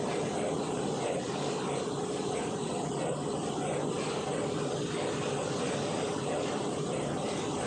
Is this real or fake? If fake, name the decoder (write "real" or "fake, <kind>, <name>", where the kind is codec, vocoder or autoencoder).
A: real